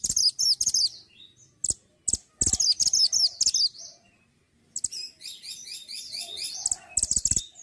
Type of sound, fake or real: real